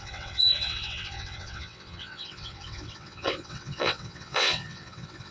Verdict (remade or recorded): remade